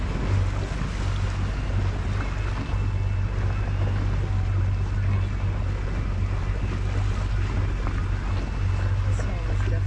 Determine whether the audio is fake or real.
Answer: real